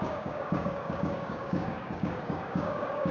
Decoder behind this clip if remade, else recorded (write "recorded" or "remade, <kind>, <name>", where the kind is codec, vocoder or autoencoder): remade, codec, DAC